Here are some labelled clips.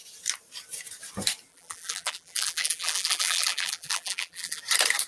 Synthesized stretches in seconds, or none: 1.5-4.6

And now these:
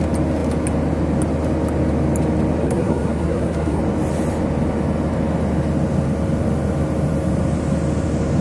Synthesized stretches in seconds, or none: 2.6-3.8

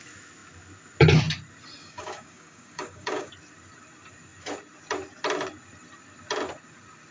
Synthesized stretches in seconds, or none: 1.8-3.3

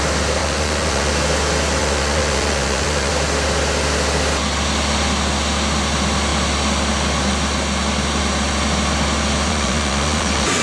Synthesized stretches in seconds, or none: 0.4-1.1; 1.8-3.1; 9.5-10.6

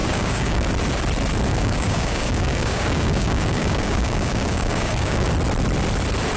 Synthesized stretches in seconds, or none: 0.0-0.7; 1.5-5.3

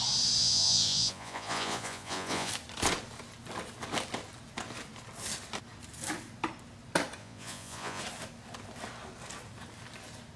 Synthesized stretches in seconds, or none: 0.4-2.5; 7.2-8.0

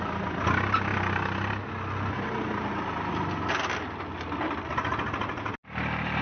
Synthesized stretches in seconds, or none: none

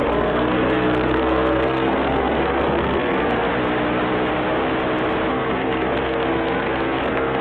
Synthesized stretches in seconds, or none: 0.0-3.5; 5.3-7.4